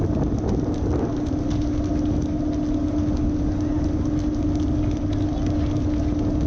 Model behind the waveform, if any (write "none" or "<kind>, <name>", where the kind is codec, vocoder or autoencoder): none